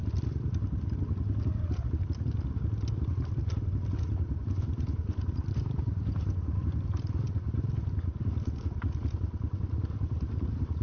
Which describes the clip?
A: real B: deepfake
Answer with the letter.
A